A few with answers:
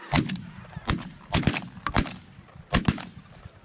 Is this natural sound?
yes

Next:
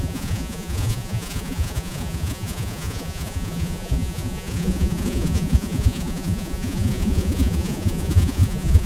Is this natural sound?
no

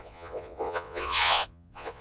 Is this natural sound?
no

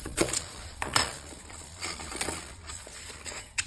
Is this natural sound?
no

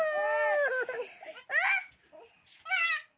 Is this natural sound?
yes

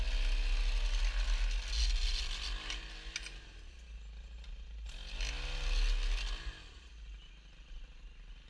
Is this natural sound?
yes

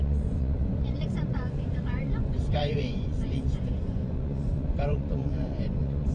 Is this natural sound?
no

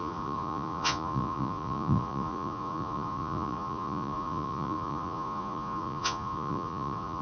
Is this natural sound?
no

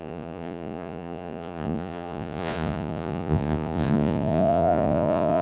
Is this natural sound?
no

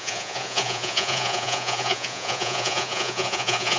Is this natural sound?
no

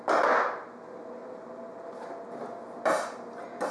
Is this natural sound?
yes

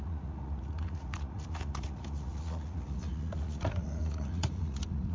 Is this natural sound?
no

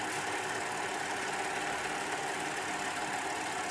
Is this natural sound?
yes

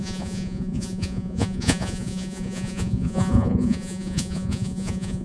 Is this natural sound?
no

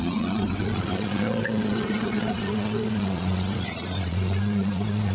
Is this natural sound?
no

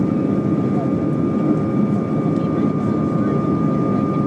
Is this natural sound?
yes